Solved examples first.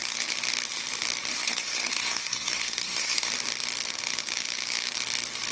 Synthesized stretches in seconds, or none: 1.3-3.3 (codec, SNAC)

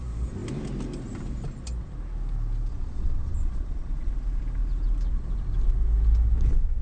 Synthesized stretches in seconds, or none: 2.7-4.1 (vocoder, Vocos)

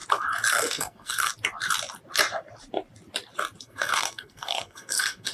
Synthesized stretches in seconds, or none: 0.5-1.3 (codec, SNAC); 3.6-5.3

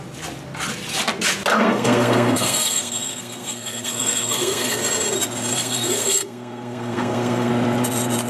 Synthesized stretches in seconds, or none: 1.5-4.8 (codec, SNAC); 5.5-7.5